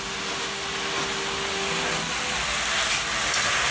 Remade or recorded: recorded